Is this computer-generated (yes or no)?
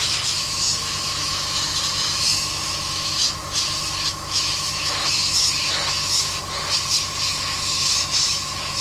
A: yes